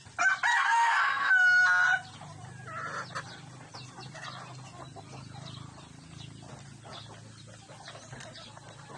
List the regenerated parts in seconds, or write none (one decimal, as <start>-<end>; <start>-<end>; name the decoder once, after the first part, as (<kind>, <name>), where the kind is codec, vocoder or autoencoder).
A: 0.5-1.3 (codec, SNAC)